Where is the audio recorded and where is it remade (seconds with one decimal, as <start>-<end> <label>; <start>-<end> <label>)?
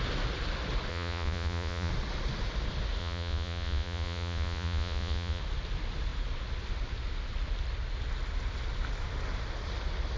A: 0.0-0.9 recorded; 0.9-1.9 remade; 1.9-3.0 recorded; 3.0-5.4 remade; 5.4-10.2 recorded